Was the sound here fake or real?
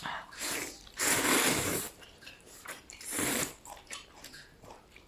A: fake